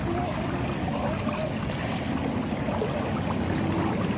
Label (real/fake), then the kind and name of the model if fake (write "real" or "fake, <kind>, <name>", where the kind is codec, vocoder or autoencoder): real